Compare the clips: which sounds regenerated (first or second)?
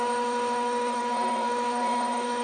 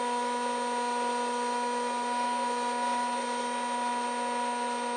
first